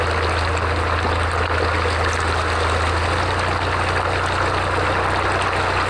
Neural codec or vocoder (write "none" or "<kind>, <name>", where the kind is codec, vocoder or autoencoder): none